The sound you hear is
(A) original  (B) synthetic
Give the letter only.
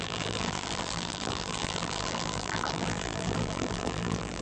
B